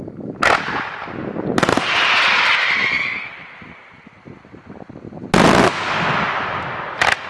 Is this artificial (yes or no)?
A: no